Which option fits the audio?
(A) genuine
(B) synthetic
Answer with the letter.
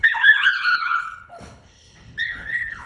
B